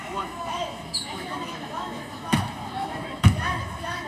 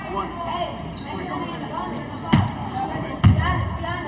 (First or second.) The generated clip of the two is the first